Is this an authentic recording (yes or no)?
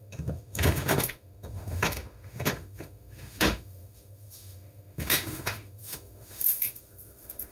no